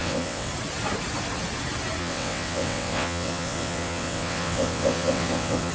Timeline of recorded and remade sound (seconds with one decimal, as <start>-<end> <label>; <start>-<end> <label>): 0.0-0.5 remade; 0.5-2.0 recorded; 2.0-5.7 remade